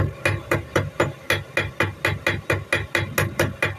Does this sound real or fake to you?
real